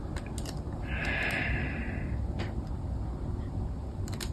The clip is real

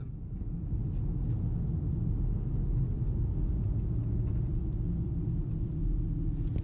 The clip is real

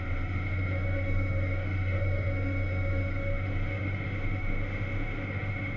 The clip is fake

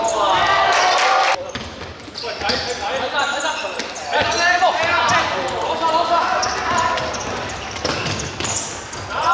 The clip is real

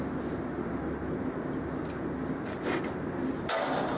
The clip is real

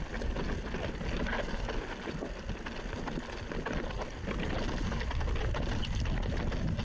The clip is real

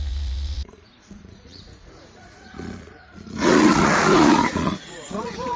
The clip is fake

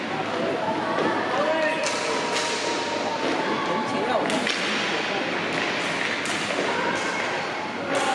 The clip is real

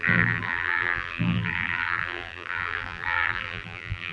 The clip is fake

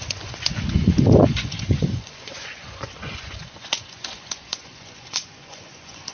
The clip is fake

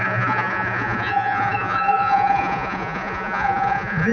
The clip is fake